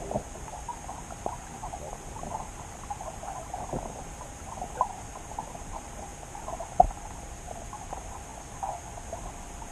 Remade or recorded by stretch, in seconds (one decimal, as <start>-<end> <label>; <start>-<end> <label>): 0.0-9.7 remade